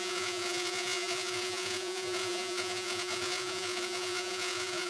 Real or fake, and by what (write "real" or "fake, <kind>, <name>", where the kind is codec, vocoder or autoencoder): fake, vocoder, Vocos